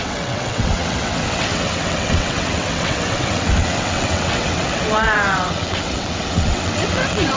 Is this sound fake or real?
fake